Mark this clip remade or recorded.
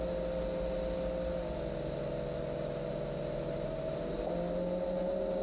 recorded